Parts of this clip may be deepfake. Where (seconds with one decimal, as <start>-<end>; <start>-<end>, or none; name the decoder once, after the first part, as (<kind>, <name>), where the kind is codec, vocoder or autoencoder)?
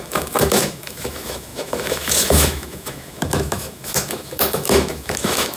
0.0-5.6 (autoencoder, DAC-VAE)